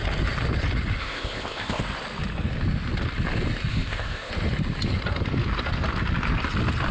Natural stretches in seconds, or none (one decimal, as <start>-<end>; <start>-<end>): 0.0-1.0; 1.8-3.7; 4.3-6.9